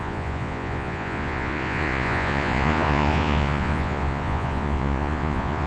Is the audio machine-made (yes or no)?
yes